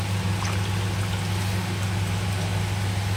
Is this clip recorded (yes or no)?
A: yes